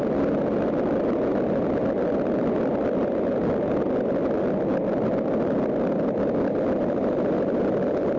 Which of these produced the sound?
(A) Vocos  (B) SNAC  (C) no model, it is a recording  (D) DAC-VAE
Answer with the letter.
C